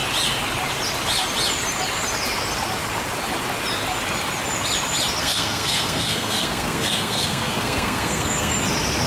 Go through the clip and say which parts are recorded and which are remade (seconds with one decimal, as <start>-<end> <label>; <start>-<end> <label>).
0.0-5.2 recorded; 5.2-8.5 remade; 8.5-9.1 recorded